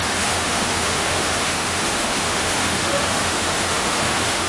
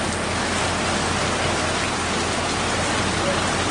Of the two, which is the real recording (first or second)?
second